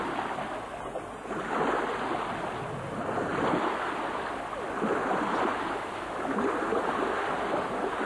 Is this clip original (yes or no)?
yes